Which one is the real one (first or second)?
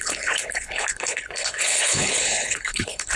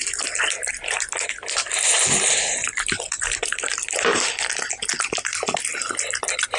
second